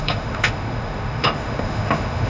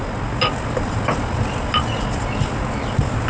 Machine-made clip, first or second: first